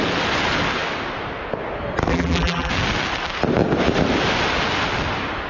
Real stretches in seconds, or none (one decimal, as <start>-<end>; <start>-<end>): 0.0-2.1; 2.7-5.5